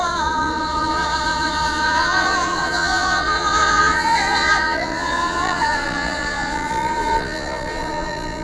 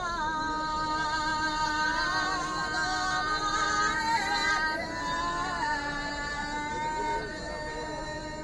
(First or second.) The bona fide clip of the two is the second